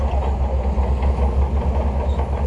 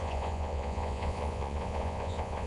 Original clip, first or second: first